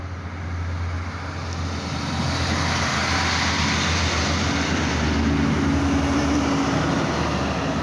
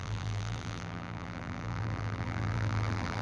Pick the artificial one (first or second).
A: second